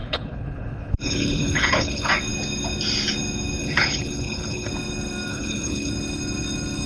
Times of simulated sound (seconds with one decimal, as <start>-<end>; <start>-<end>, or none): 0.0-2.1; 3.6-4.7; 5.3-5.9